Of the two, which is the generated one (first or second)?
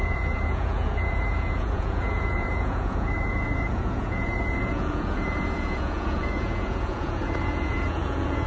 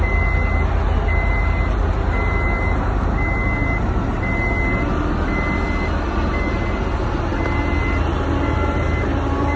first